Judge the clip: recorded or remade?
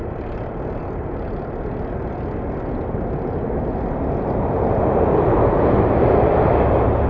recorded